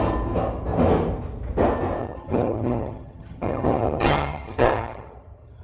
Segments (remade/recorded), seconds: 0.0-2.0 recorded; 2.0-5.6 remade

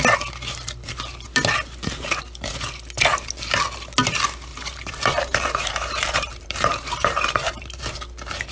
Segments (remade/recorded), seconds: 0.0-4.5 recorded; 4.5-7.8 remade; 7.8-8.5 recorded